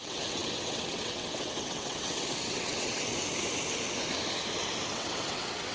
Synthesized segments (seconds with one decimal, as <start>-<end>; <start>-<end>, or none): 0.0-3.1; 4.9-5.7